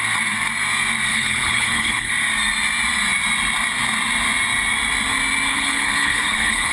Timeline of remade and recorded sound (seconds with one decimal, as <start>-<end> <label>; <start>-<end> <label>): 0.0-1.1 recorded; 1.1-2.1 remade; 2.1-5.5 recorded; 5.5-6.7 remade